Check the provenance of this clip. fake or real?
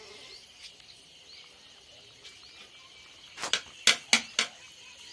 real